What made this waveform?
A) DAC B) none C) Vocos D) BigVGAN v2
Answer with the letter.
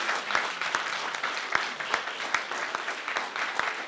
B